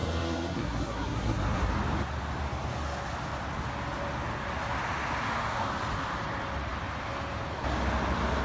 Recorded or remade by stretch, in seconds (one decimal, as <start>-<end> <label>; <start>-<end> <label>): 0.0-1.7 remade; 1.7-8.4 recorded

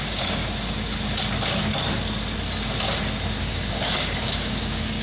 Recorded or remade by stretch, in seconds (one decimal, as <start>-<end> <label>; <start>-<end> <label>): 0.0-0.4 remade; 0.4-3.4 recorded; 3.4-5.0 remade

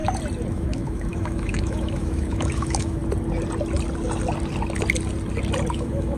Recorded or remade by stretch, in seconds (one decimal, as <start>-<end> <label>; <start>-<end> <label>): 0.0-0.5 recorded; 0.5-3.0 remade; 3.0-5.7 recorded; 5.7-6.2 remade

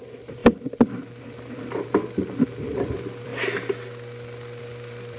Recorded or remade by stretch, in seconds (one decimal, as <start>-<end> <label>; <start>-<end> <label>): 0.0-0.4 remade; 0.4-1.2 recorded; 1.2-2.0 remade; 2.0-2.6 recorded; 2.6-3.3 remade; 3.3-4.6 recorded; 4.6-5.2 remade

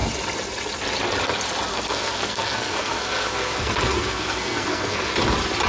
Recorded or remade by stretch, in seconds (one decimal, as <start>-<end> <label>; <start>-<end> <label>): 0.0-1.7 recorded; 1.7-5.1 remade; 5.1-5.7 recorded

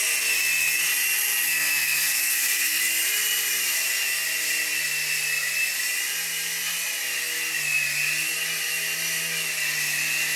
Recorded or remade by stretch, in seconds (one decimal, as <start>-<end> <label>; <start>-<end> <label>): 0.0-1.5 recorded; 1.5-2.8 remade; 2.8-10.4 recorded

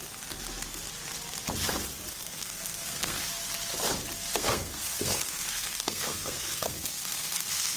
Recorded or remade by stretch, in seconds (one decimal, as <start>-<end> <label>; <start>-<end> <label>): 0.0-2.1 recorded; 2.1-3.3 remade; 3.3-4.3 recorded; 4.3-7.8 remade

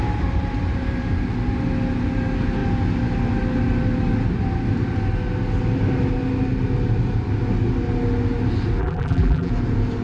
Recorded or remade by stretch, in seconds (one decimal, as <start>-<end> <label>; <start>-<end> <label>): 0.0-8.8 recorded; 8.8-9.5 remade; 9.5-10.0 recorded